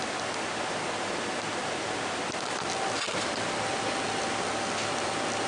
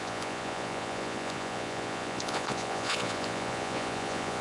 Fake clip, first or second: second